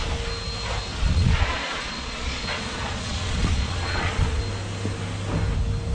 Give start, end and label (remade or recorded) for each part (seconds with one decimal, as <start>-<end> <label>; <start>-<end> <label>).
0.0-0.9 recorded; 0.9-4.4 remade; 4.4-5.9 recorded